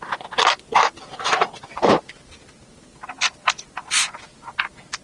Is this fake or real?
real